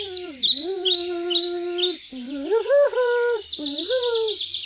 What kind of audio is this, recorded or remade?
recorded